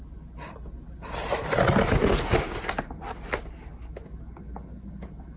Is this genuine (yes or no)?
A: yes